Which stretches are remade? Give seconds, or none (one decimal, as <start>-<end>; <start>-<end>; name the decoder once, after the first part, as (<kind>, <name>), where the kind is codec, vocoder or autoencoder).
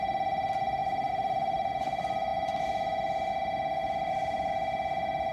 0.8-1.7 (vocoder, BigVGAN v2); 3.8-4.5